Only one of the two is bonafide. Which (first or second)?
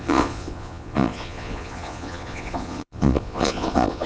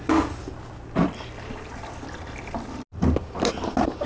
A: second